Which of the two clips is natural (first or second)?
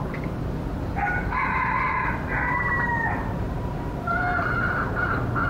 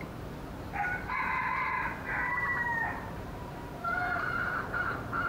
first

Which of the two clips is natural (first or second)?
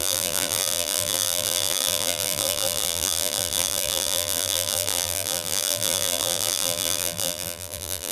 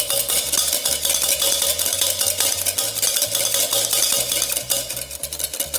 second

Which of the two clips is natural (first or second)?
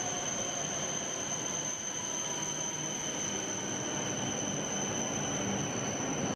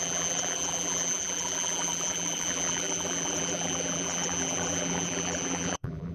first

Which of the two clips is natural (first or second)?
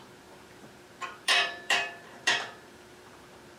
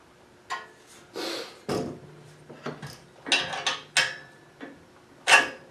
second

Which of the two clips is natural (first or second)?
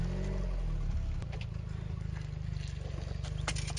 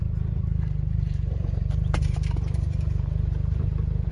first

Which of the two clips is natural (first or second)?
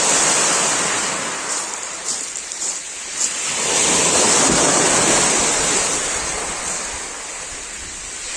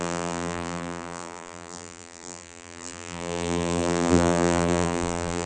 first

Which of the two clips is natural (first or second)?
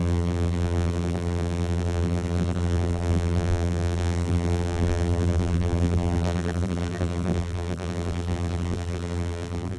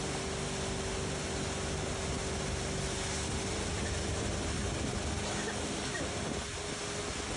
second